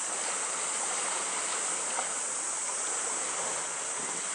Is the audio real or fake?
real